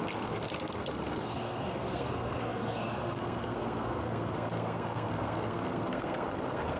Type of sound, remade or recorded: remade